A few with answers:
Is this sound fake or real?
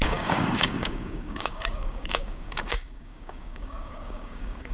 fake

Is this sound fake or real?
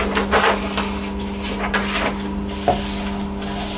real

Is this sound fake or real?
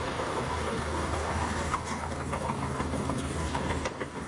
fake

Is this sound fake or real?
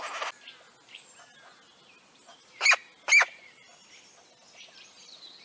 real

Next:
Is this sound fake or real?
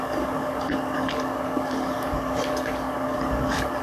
fake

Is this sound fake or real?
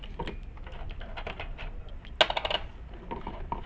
real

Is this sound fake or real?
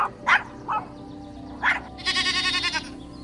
real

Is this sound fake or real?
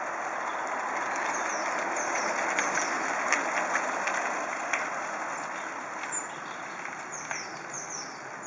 real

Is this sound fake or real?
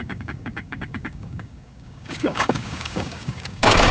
fake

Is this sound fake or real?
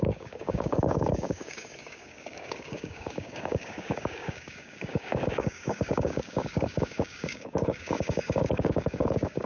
fake